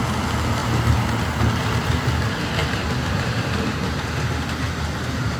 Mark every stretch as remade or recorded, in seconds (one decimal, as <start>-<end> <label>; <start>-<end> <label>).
0.0-2.6 recorded; 2.6-4.1 remade; 4.1-5.4 recorded